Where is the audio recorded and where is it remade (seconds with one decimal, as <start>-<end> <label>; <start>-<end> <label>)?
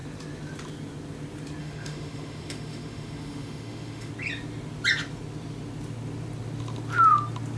0.0-1.6 recorded; 1.6-4.1 remade; 4.1-7.6 recorded